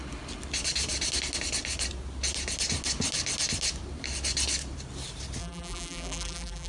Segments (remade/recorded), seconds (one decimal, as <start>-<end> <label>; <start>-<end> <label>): 0.0-5.4 recorded; 5.4-6.7 remade